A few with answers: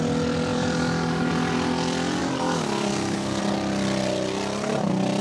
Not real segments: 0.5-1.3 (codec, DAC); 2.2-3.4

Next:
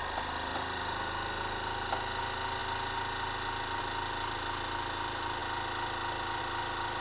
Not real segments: none

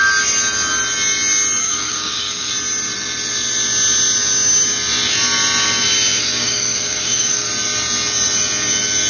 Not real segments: 1.6-2.5 (codec, DAC); 6.2-7.5

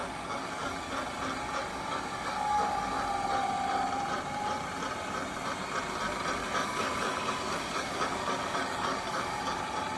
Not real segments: 0.0-0.9 (codec, DAC); 1.7-2.9; 6.4-9.6

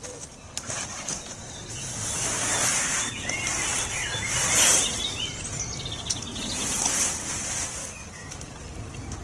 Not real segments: 7.8-8.3 (codec, DAC)

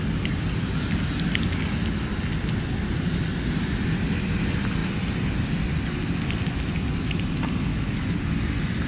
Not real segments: 7.7-8.2 (codec, DAC)

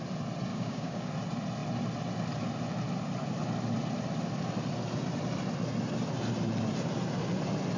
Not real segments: 0.5-1.1 (codec, DAC)